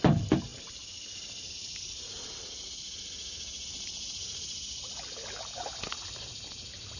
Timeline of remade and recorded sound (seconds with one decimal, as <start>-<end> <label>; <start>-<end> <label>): 0.0-7.0 recorded